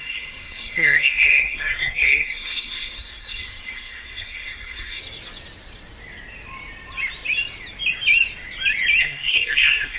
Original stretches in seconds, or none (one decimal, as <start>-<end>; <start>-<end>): 5.0-9.0

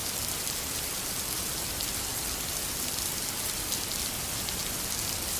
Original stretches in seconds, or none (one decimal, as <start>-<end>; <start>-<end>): 0.0-5.4